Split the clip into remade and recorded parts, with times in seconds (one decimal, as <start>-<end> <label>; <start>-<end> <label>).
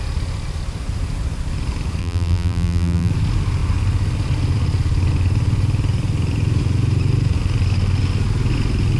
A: 0.0-2.0 recorded; 2.0-3.1 remade; 3.1-9.0 recorded